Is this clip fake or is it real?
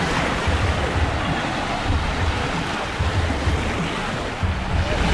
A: real